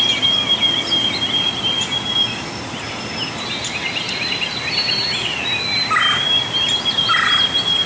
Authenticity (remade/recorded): recorded